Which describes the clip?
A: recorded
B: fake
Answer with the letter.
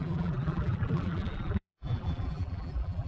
B